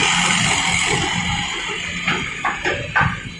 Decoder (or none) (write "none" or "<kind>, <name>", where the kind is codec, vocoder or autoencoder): none